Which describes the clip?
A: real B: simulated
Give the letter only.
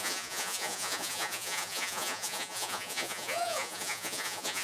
B